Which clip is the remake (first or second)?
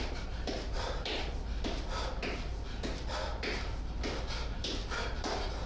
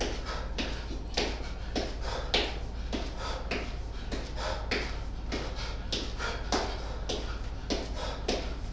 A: first